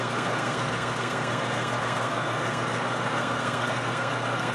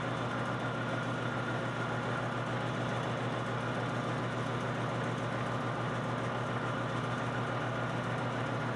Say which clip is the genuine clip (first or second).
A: second